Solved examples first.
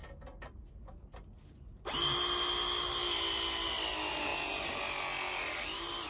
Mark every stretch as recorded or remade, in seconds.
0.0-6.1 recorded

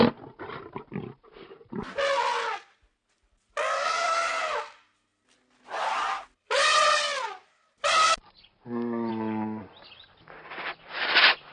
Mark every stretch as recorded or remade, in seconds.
0.0-11.5 recorded

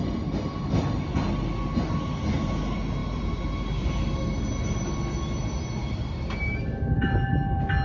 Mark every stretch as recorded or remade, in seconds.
0.0-5.8 recorded; 5.8-7.1 remade; 7.1-7.8 recorded

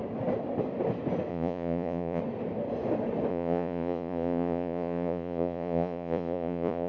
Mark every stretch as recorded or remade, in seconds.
0.0-1.3 recorded; 1.3-2.2 remade; 2.2-3.3 recorded; 3.3-6.9 remade

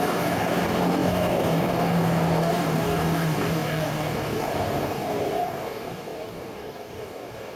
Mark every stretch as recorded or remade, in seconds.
0.0-7.6 remade